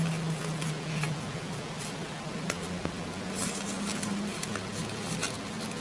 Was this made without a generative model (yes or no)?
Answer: yes